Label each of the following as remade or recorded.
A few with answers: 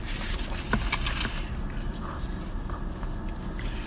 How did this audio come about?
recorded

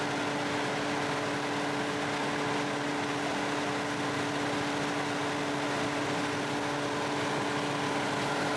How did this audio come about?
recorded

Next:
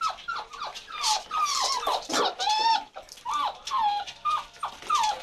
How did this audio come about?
remade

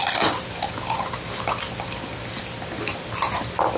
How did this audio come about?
recorded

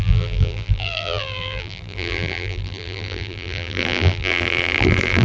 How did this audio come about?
remade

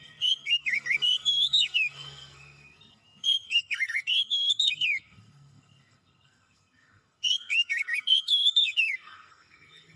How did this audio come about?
remade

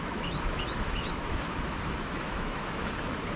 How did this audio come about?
remade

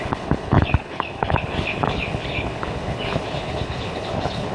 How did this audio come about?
remade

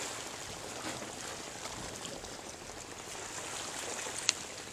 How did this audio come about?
recorded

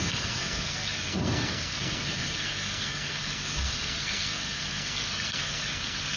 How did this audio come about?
remade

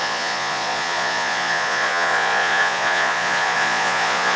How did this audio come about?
remade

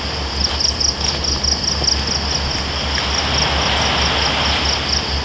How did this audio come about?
recorded